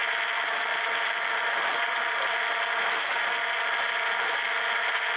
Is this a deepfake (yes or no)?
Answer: no